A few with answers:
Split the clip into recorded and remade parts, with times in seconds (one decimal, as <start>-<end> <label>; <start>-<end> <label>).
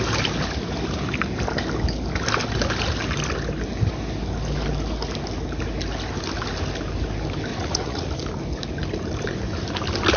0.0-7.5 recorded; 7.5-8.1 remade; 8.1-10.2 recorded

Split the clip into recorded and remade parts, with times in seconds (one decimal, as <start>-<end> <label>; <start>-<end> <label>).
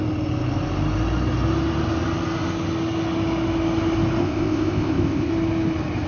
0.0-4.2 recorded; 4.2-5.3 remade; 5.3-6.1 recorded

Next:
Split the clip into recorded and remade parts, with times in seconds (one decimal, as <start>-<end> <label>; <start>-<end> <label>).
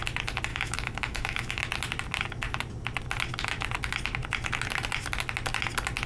0.0-0.5 recorded; 0.5-1.6 remade; 1.6-6.1 recorded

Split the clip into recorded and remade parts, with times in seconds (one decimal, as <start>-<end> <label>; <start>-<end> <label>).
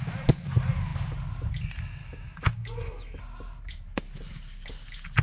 0.0-2.0 recorded; 2.0-3.2 remade; 3.2-5.2 recorded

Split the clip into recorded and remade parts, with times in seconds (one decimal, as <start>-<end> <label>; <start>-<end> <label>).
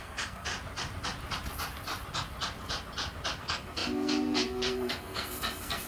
0.0-0.5 remade; 0.5-3.4 recorded; 3.4-5.9 remade